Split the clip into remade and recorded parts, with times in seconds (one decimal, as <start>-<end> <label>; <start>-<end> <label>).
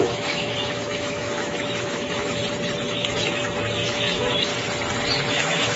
0.0-2.4 remade; 2.4-2.9 recorded; 2.9-4.5 remade; 4.5-5.3 recorded; 5.3-5.8 remade